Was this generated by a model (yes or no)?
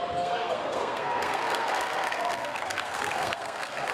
yes